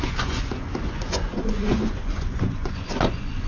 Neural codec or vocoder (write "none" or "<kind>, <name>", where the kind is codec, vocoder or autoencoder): vocoder, Vocos